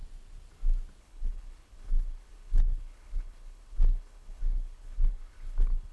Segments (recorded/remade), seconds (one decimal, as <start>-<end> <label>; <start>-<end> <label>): 0.0-1.0 recorded; 1.0-5.9 remade